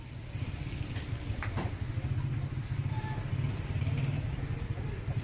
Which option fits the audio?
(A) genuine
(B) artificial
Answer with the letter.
A